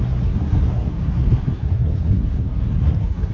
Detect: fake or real fake